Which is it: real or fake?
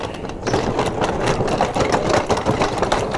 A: real